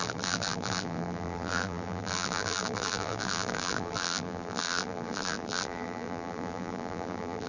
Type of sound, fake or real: fake